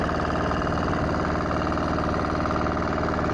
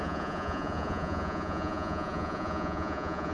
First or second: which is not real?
second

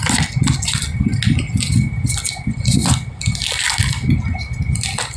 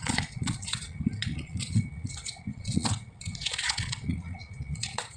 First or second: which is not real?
second